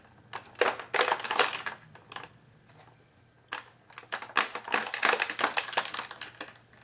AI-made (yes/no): no